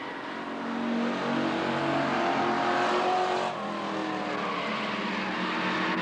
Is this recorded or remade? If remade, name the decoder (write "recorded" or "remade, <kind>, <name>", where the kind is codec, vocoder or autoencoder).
recorded